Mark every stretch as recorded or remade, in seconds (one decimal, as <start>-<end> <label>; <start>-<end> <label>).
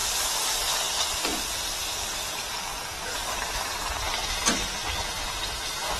0.0-0.6 remade; 0.6-1.3 recorded; 1.3-2.4 remade; 2.4-2.9 recorded; 2.9-4.4 remade; 4.4-6.0 recorded